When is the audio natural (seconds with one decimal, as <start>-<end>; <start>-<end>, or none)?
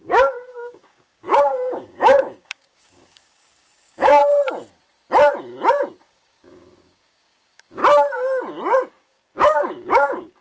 4.2-6.0; 7.8-8.9